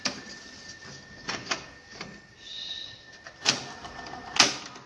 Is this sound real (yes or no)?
yes